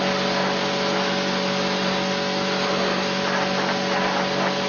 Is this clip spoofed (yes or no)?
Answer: no